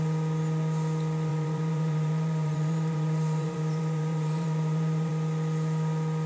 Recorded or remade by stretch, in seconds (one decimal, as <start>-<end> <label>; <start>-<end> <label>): 0.0-1.3 recorded; 1.3-5.1 remade; 5.1-6.3 recorded